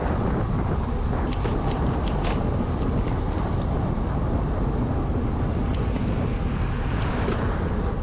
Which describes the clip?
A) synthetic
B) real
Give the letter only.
B